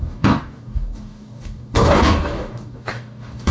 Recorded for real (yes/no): no